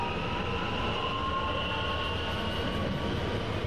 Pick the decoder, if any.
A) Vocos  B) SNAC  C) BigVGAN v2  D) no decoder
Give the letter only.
D